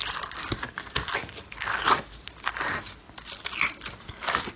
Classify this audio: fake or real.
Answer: real